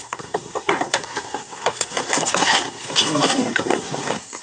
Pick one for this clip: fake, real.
fake